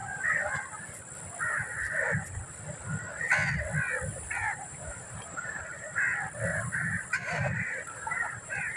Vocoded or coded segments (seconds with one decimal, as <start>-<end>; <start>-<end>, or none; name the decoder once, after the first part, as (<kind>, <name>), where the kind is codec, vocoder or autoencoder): 4.4-5.6 (vocoder, BigVGAN v2); 6.5-8.8